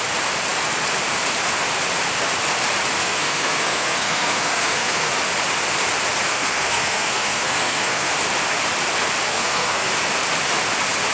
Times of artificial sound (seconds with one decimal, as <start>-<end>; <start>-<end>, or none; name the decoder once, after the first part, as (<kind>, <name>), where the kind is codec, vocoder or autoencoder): 3.0-5.1 (codec, SNAC); 6.3-8.1; 9.3-9.9